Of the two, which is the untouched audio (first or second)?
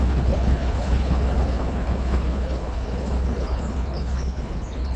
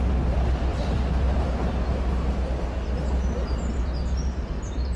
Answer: second